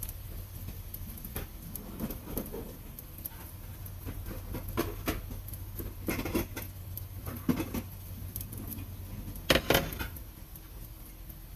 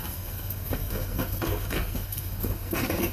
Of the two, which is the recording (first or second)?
first